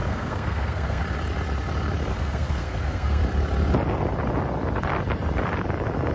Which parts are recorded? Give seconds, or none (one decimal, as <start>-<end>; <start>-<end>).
1.0-2.1; 3.2-6.1